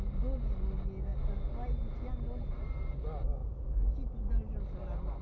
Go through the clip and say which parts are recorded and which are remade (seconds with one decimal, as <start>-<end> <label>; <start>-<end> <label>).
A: 0.0-5.2 recorded